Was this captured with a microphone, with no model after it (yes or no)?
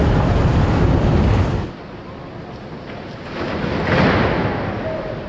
yes